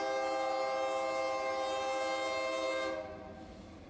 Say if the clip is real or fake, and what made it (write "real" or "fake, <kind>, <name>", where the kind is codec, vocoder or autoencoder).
real